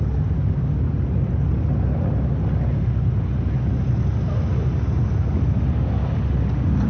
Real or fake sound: real